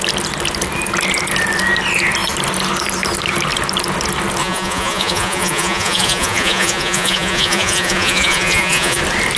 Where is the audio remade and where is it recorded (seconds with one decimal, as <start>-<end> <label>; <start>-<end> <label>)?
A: 0.0-4.4 recorded; 4.4-9.0 remade; 9.0-9.4 recorded